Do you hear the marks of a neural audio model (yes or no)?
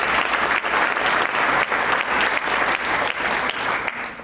no